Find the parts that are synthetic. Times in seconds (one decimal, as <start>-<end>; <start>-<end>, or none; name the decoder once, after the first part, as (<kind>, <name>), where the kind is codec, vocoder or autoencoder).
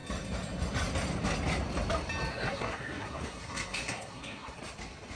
2.3-4.6 (codec, SNAC)